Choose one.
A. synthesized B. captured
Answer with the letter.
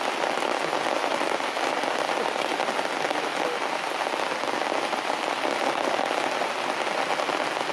B